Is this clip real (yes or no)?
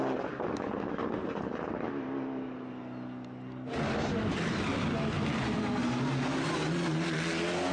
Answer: yes